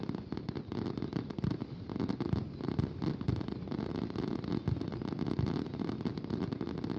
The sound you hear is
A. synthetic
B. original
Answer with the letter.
B